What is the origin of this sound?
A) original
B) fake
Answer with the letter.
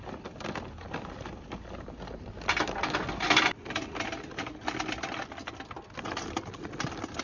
A